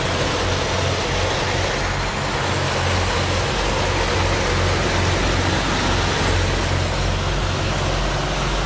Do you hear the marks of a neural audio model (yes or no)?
no